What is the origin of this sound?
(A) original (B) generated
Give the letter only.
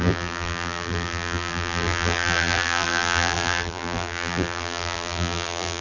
B